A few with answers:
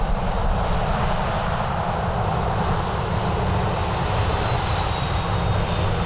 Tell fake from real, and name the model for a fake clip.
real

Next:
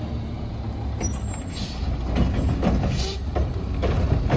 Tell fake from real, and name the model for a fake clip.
real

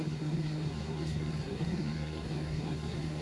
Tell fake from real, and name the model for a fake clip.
fake, codec, SNAC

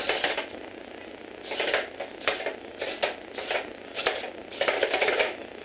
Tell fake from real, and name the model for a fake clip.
real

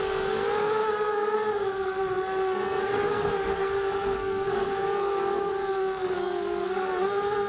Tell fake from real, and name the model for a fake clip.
fake, codec, SNAC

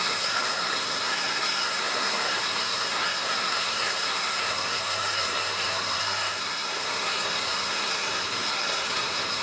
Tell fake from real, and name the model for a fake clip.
fake, codec, SNAC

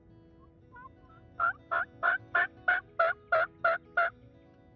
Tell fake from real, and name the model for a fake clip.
real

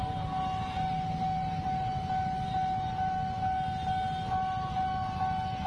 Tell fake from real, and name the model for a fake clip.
real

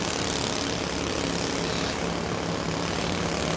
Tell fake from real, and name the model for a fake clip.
real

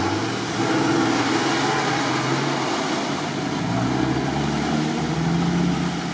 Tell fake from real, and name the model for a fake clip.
real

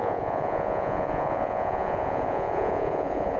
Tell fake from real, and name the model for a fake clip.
fake, vocoder, Vocos